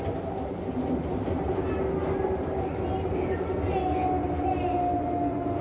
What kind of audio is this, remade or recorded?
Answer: recorded